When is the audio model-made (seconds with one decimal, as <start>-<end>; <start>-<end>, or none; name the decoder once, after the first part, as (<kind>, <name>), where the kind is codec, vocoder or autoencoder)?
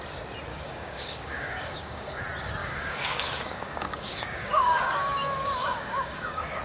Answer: 0.5-2.2 (codec, DAC); 2.6-6.6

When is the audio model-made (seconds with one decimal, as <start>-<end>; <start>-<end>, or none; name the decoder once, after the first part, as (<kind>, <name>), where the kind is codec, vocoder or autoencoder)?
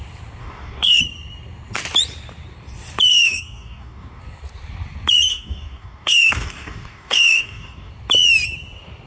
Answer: 0.4-1.0 (codec, DAC); 3.1-4.2; 5.3-7.9